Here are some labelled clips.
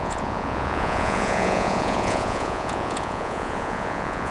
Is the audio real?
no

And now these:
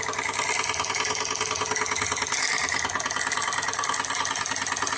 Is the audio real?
yes